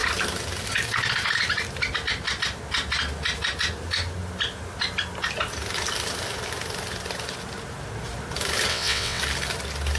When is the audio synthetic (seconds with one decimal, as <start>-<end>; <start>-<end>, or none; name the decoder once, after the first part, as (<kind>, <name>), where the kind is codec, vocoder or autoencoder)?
8.7-9.2 (vocoder, WaveNeXt)